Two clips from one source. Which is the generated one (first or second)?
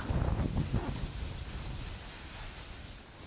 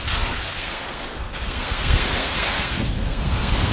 second